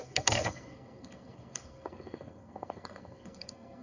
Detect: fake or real fake